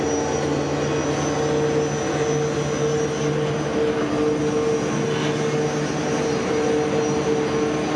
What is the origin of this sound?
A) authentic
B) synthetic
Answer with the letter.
A